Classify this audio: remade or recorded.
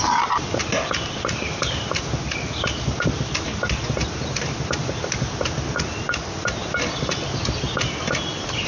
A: recorded